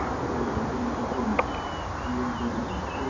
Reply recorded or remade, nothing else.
recorded